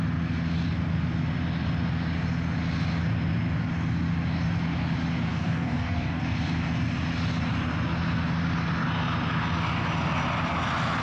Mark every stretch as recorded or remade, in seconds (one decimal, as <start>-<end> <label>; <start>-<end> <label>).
0.0-5.3 recorded; 5.3-6.2 remade; 6.2-11.0 recorded